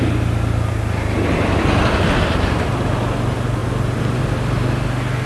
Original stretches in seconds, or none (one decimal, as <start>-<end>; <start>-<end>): 0.0-5.3

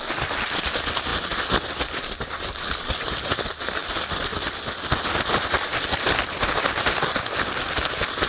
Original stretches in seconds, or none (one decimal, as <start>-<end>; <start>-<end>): 0.0-8.3